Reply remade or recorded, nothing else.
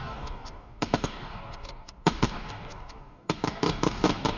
remade